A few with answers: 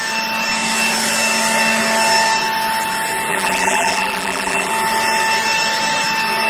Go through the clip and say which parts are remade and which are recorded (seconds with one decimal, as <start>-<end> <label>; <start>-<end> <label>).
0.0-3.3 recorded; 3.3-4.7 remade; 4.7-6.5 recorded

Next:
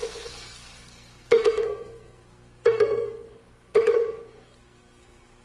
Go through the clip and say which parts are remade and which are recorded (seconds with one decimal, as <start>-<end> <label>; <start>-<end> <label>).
0.0-5.4 remade

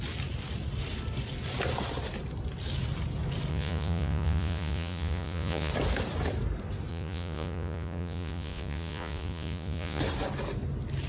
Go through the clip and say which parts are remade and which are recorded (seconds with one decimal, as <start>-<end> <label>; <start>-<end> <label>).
0.0-3.5 recorded; 3.5-5.7 remade; 5.7-6.9 recorded; 6.9-10.0 remade; 10.0-11.1 recorded

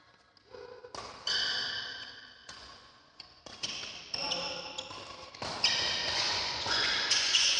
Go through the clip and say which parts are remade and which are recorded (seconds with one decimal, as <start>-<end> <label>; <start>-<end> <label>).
0.0-2.4 recorded; 2.4-3.7 remade; 3.7-6.0 recorded; 6.0-7.6 remade